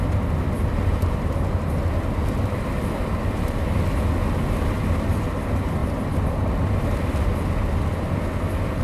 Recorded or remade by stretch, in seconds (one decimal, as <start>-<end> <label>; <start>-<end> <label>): 0.0-8.8 recorded